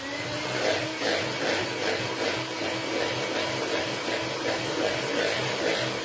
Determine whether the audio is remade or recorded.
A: recorded